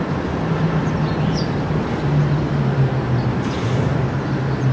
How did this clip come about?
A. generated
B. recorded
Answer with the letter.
B